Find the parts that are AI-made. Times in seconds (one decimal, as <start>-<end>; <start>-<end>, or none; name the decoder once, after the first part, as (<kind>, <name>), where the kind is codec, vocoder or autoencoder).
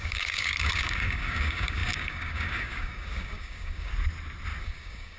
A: 0.0-3.9 (codec, DAC); 4.6-5.2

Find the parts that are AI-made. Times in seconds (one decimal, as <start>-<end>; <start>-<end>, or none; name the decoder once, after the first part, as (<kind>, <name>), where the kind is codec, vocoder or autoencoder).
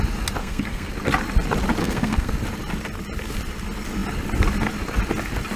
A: 0.4-0.9 (codec, SNAC); 1.8-2.3